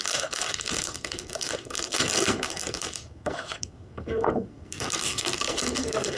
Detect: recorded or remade remade